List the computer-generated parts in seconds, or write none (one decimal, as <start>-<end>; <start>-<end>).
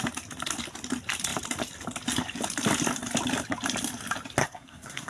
4.4-5.1